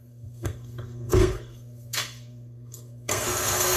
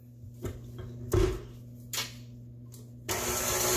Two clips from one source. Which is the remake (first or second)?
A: first